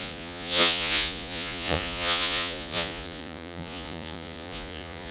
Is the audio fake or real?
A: fake